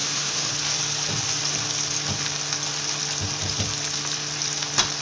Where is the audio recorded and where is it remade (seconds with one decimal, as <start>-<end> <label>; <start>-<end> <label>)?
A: 0.0-0.5 remade; 0.5-5.0 recorded